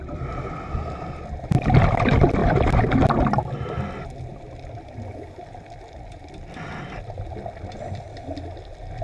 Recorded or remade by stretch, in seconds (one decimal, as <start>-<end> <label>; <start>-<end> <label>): 0.0-9.0 recorded